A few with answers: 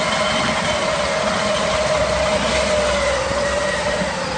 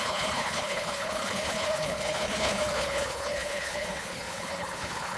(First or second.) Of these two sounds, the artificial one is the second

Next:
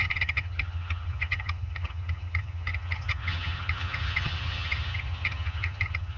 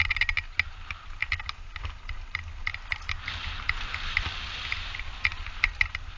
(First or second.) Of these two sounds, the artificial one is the first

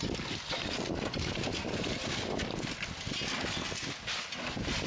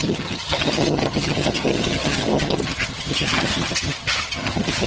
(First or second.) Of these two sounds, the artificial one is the second